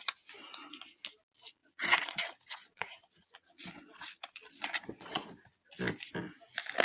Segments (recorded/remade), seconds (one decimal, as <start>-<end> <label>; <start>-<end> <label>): 0.0-1.6 recorded; 1.6-5.7 remade; 5.7-6.8 recorded